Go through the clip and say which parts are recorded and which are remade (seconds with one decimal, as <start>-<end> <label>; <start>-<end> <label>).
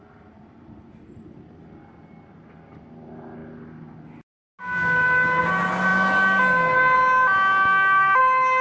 0.0-8.6 recorded